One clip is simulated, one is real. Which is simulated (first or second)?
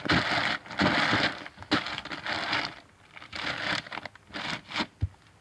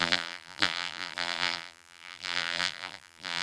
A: second